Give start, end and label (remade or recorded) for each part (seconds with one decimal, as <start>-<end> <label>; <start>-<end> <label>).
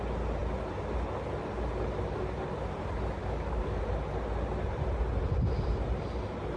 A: 0.0-3.2 recorded; 3.2-3.8 remade; 3.8-6.6 recorded